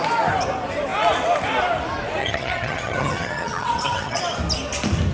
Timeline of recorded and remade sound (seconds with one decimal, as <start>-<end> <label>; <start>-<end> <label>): 0.0-2.2 recorded; 2.2-4.2 remade; 4.2-5.1 recorded